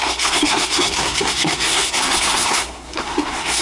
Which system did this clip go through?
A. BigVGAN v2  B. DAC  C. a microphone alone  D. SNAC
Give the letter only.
D